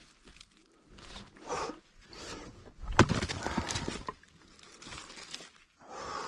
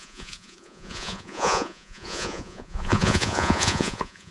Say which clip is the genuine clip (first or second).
first